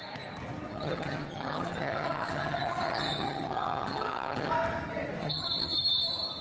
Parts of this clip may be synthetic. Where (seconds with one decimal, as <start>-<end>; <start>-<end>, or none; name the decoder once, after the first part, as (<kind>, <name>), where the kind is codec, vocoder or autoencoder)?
0.7-4.5 (vocoder, HiFi-GAN); 5.2-6.0